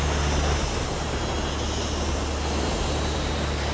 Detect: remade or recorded recorded